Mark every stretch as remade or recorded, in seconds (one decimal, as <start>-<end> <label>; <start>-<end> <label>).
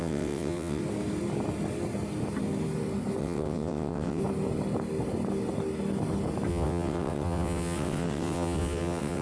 0.0-0.8 remade; 0.8-3.2 recorded; 3.2-4.2 remade; 4.2-6.5 recorded; 6.5-9.2 remade